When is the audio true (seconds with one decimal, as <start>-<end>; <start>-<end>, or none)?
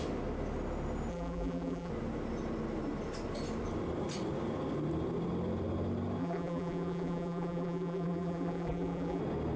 0.0-1.1; 1.9-6.2; 9.2-9.6